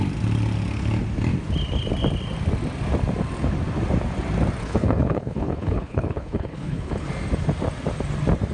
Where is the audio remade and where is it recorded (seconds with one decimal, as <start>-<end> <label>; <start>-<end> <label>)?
0.0-4.6 recorded; 4.6-7.1 remade; 7.1-8.5 recorded